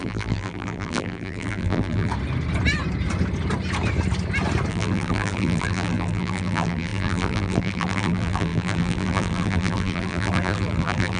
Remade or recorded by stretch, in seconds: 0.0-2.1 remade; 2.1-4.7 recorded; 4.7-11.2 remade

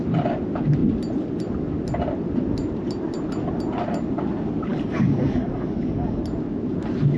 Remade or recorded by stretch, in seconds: 0.0-4.7 recorded; 4.7-6.2 remade; 6.2-7.2 recorded

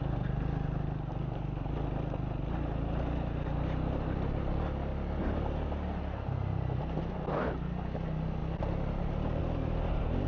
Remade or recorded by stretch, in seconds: 0.0-10.3 recorded